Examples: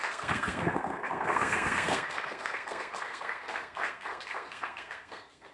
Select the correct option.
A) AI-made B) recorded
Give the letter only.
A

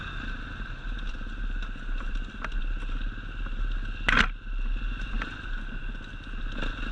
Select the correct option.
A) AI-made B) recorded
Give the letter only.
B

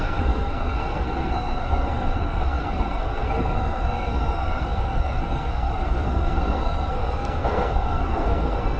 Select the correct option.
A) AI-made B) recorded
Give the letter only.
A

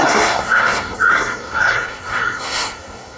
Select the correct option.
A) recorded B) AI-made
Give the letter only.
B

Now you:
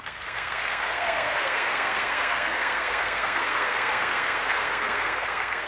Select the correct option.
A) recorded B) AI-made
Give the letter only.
B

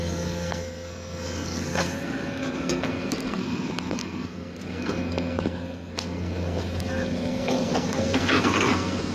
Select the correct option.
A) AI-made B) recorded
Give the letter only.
A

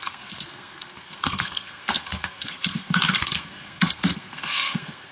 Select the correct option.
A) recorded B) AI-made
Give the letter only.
B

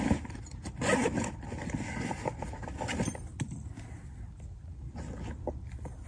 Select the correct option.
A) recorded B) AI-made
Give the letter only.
A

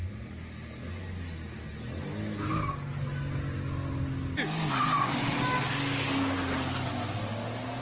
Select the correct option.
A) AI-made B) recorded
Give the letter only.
B